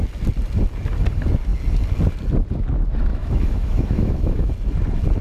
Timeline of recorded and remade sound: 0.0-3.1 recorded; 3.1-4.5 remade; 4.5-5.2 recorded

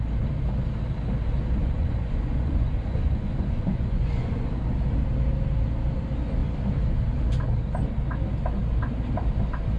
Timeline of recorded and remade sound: 0.0-1.6 recorded; 1.6-4.5 remade; 4.5-9.8 recorded

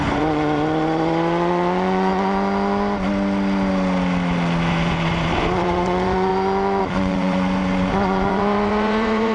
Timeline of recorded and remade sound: 0.0-2.1 remade; 2.1-4.7 recorded; 4.7-6.3 remade; 6.3-6.8 recorded; 6.8-9.3 remade

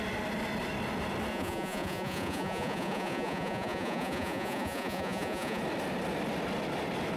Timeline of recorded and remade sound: 0.0-1.3 recorded; 1.3-5.6 remade; 5.6-7.2 recorded

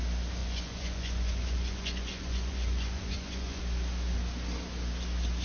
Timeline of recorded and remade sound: 0.0-0.4 recorded; 0.4-3.6 remade; 3.6-5.4 recorded

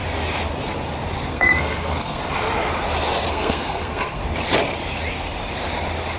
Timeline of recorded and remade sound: 0.0-1.3 recorded; 1.3-2.2 remade; 2.2-3.3 recorded; 3.3-4.2 remade; 4.2-6.2 recorded

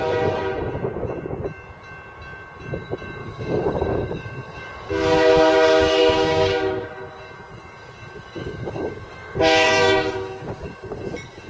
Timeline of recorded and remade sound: 0.0-3.2 recorded; 3.2-4.6 remade; 4.6-6.0 recorded; 6.0-6.9 remade; 6.9-8.4 recorded; 8.4-11.0 remade; 11.0-11.5 recorded